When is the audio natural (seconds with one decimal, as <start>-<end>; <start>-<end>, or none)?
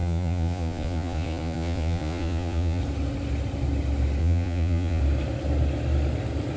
2.8-4.2; 5.0-6.6